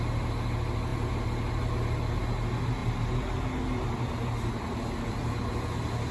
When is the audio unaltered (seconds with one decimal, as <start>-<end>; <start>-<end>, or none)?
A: 0.0-0.9; 2.2-2.8; 4.5-6.1